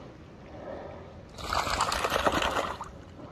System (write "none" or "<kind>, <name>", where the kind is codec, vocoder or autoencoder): none